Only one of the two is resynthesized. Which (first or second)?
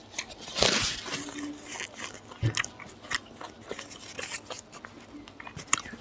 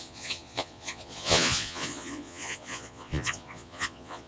second